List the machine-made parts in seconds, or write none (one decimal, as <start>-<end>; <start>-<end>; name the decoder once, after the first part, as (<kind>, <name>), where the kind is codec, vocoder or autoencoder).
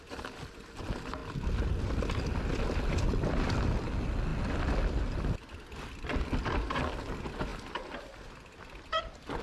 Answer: none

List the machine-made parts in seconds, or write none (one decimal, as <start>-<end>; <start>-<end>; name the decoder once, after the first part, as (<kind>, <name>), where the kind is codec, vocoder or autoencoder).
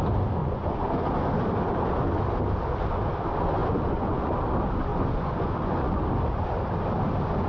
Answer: 0.4-1.1 (vocoder, Vocos); 3.6-4.3; 4.9-6.0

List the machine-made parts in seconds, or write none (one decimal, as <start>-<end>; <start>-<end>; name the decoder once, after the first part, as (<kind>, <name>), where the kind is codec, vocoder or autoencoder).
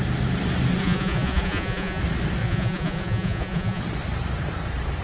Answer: 0.8-2.0 (vocoder, Vocos); 2.4-3.8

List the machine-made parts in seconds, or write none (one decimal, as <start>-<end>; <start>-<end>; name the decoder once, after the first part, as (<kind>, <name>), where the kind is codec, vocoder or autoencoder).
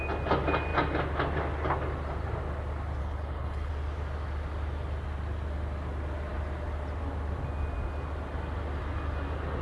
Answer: 3.0-3.7 (codec, HILCodec)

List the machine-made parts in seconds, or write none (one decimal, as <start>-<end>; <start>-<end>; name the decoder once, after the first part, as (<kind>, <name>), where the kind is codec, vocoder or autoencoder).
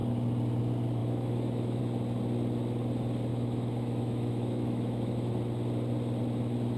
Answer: 1.0-1.8 (autoencoder, DAC-VAE); 3.3-5.3